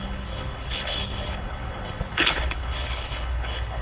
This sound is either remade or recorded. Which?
remade